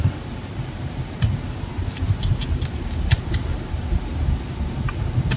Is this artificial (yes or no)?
yes